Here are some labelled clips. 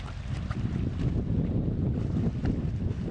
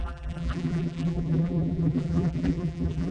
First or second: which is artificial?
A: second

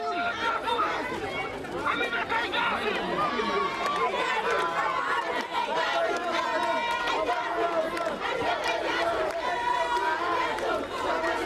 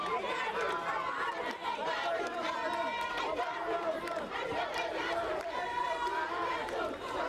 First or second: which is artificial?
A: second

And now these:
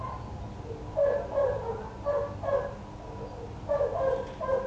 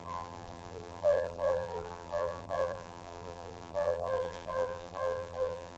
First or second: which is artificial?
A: second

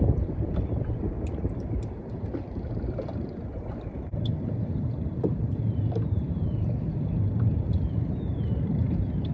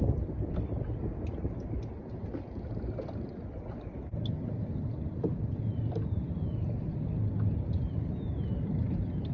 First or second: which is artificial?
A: first